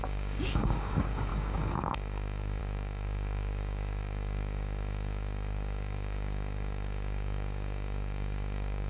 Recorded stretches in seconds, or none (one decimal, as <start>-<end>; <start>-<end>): none